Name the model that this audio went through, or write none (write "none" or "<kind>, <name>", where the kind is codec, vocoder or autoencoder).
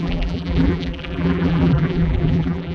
vocoder, BigVGAN v2